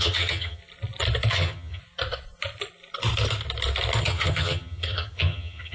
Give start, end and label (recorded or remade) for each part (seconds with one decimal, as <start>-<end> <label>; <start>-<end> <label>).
0.0-0.6 remade; 0.6-1.3 recorded; 1.3-1.8 remade; 1.8-4.0 recorded; 4.0-5.7 remade